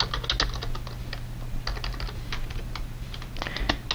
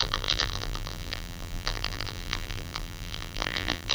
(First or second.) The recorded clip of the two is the first